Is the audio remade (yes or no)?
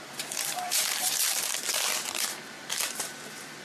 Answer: yes